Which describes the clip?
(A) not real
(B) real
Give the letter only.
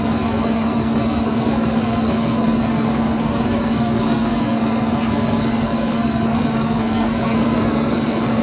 A